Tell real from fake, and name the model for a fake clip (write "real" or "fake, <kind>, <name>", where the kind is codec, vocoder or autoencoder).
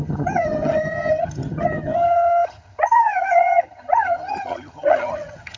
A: fake, vocoder, HiFi-GAN